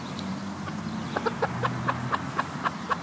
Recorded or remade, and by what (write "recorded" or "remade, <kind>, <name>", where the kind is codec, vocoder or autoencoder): recorded